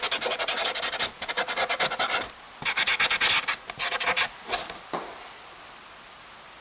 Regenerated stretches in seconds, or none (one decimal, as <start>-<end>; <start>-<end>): none

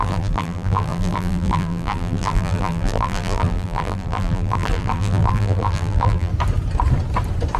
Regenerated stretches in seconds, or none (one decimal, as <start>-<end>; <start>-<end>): 0.0-6.3

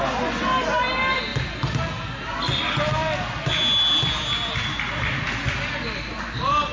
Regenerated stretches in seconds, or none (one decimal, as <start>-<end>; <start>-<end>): none

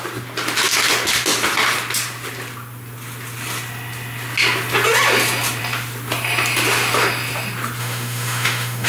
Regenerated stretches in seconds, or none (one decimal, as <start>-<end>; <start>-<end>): 7.8-8.9